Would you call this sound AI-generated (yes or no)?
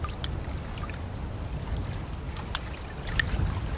no